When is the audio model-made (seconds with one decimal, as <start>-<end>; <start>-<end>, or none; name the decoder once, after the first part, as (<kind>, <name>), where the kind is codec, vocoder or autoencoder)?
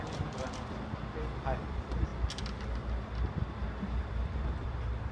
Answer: 0.0-0.4 (vocoder, BigVGAN v2); 1.7-2.1; 4.0-5.1